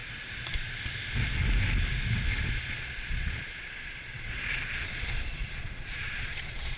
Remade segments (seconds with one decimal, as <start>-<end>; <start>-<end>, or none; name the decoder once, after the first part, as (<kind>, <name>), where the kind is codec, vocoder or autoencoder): 2.6-6.8 (vocoder, Vocos)